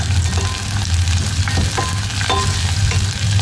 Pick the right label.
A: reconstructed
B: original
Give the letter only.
B